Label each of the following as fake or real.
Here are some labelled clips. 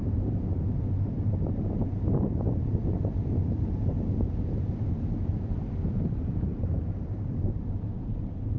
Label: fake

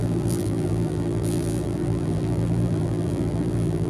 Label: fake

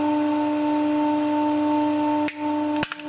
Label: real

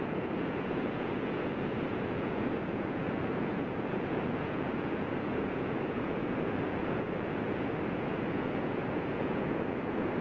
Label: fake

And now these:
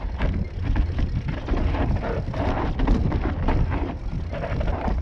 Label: real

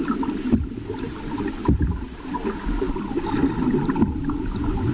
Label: real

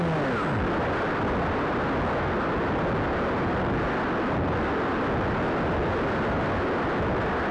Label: real